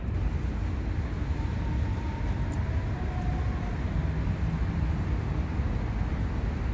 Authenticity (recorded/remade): recorded